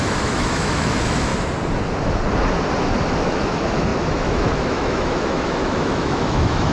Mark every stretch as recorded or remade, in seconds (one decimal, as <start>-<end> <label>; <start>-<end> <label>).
0.0-1.3 remade; 1.3-3.2 recorded; 3.2-6.7 remade